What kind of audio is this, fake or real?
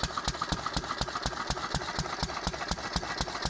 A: real